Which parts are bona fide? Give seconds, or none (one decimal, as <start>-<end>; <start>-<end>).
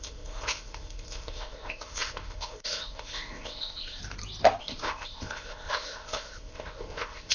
4.0-4.6